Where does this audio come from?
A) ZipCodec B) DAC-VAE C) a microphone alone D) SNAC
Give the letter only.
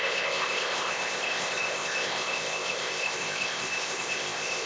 A